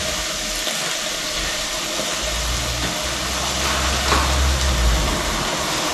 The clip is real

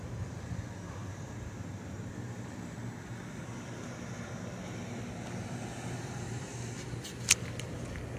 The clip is real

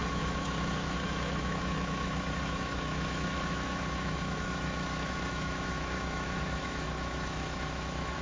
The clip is fake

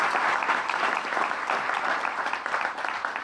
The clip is real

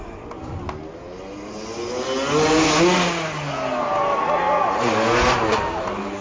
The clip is real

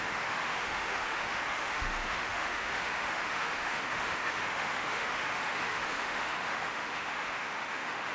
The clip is fake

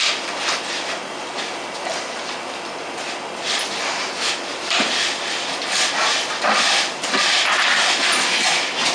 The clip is real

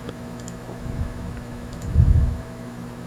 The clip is fake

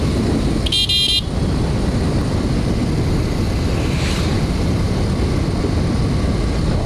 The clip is real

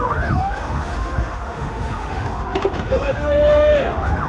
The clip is fake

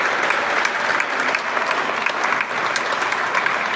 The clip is real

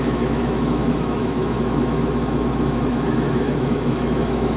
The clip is fake